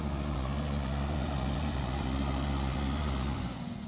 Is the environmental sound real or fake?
fake